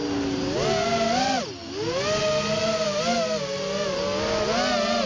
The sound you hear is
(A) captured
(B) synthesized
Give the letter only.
A